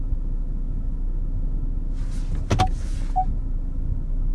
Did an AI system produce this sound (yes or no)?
no